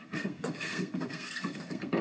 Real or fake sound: fake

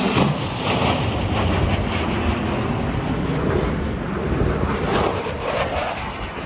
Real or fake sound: real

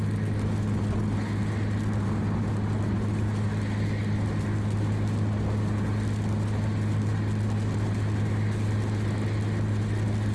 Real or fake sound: real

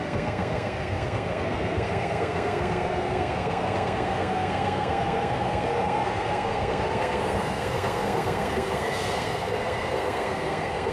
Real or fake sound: fake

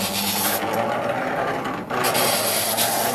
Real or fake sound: real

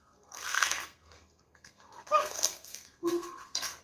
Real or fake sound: fake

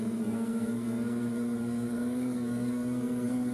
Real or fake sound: fake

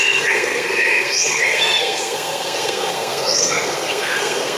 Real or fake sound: fake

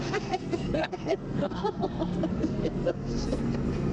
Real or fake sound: fake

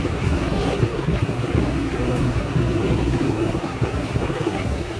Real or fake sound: fake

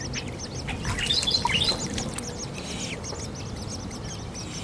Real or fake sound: real